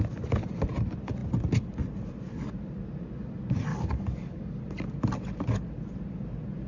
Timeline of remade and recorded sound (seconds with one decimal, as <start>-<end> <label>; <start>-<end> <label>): 0.0-3.7 recorded; 3.7-4.6 remade; 4.6-6.7 recorded